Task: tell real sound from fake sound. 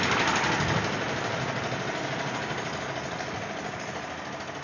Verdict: real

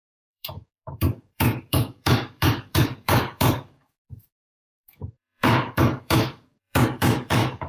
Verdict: fake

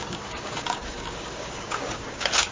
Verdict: fake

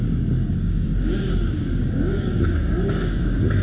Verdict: fake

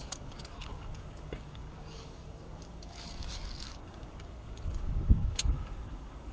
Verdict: fake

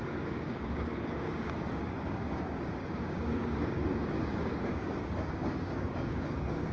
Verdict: fake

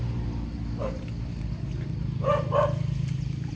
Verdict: real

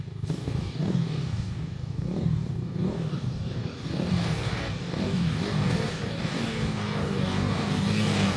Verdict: fake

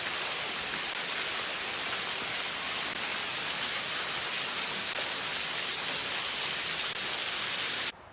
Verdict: real